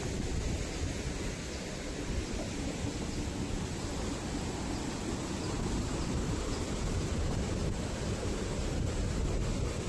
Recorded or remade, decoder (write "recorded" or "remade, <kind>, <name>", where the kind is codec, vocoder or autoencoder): recorded